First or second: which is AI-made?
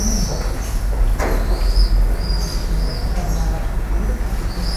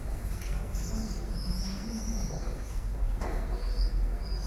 second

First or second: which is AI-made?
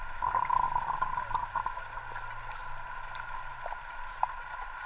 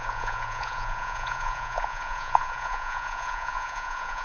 second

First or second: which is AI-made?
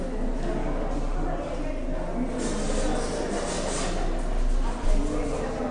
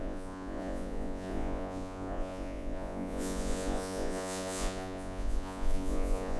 second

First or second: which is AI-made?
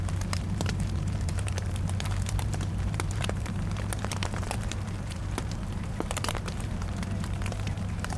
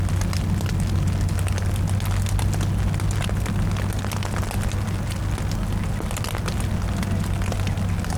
first